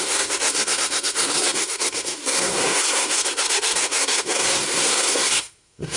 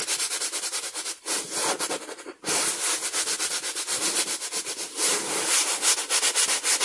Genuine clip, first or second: second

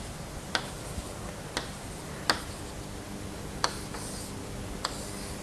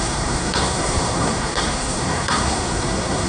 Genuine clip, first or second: first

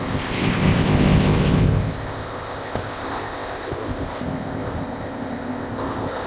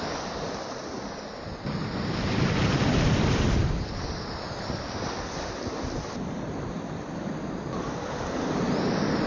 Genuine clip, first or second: second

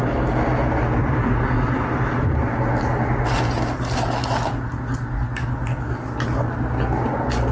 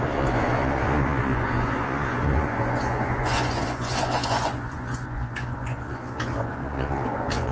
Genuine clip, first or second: first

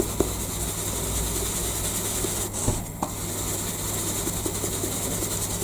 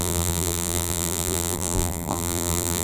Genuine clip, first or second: first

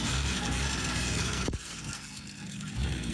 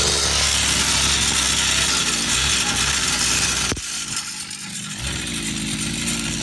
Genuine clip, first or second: second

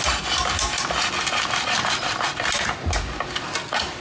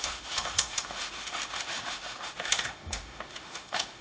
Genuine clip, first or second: first